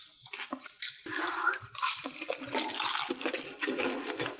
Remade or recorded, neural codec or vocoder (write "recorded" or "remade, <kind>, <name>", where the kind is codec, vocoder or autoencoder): recorded